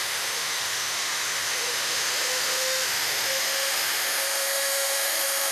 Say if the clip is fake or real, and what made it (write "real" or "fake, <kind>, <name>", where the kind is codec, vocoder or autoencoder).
fake, autoencoder, DAC-VAE